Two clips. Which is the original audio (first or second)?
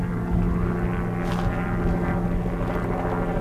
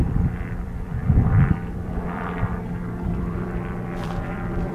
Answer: first